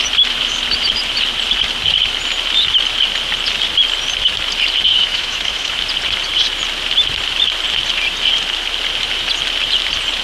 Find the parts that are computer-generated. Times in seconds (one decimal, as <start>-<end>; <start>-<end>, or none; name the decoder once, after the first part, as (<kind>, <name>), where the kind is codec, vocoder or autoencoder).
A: 4.9-5.8 (autoencoder, DAC-VAE)

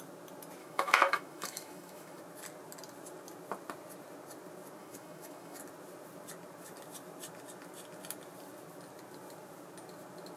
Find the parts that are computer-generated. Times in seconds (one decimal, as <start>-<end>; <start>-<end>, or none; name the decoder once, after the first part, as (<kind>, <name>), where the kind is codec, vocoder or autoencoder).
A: 0.6-2.2 (autoencoder, DAC-VAE); 4.8-5.6